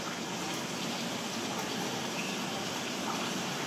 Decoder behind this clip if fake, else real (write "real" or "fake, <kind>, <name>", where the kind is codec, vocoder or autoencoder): real